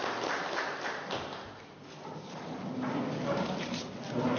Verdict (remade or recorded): recorded